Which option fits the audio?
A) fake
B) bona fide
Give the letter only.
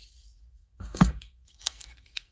A